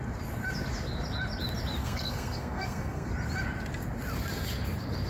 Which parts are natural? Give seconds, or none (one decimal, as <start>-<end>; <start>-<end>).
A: 0.0-1.8; 3.1-5.1